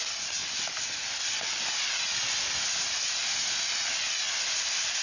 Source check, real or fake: real